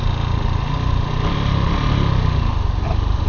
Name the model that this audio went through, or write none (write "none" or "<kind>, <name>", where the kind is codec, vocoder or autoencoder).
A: none